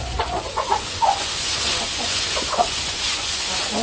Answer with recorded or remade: remade